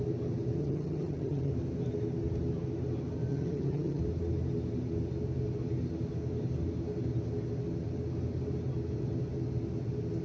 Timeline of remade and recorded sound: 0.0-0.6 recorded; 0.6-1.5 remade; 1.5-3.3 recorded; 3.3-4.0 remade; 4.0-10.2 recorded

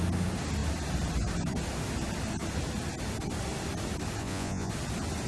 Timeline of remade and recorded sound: 0.0-4.2 recorded; 4.2-4.7 remade; 4.7-5.3 recorded

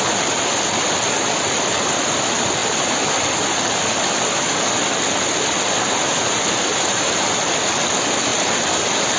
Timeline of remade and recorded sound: 0.0-9.2 recorded

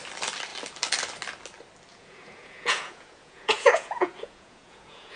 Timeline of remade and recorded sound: 0.0-1.9 recorded; 1.9-5.2 remade

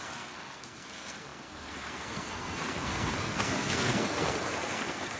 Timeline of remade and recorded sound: 0.0-5.2 remade

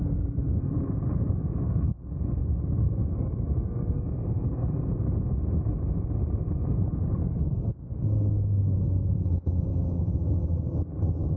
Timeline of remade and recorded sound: 0.0-0.5 recorded; 0.5-2.0 remade; 2.0-2.4 recorded; 2.4-4.6 remade; 4.6-9.7 recorded; 9.7-10.4 remade; 10.4-11.4 recorded

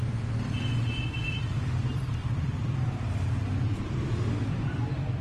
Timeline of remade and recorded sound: 0.0-1.9 recorded; 1.9-5.2 remade

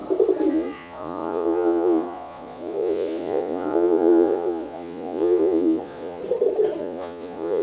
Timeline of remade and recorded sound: 0.0-0.5 recorded; 0.5-6.2 remade; 6.2-6.8 recorded; 6.8-7.6 remade